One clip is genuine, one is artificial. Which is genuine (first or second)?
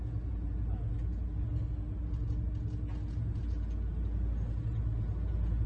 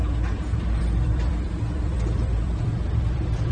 first